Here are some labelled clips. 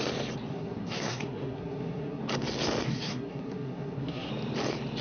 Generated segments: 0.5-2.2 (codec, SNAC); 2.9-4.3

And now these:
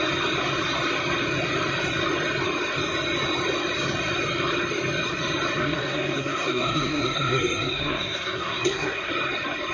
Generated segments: 5.6-9.1 (codec, SNAC)

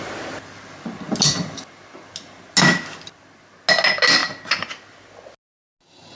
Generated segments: none